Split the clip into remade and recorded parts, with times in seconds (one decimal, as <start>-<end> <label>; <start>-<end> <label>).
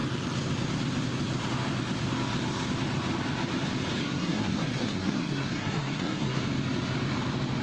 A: 0.0-4.0 recorded; 4.0-6.4 remade; 6.4-7.6 recorded